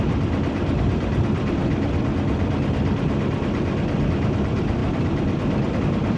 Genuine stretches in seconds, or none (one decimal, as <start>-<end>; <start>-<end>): 1.6-4.1; 4.8-5.8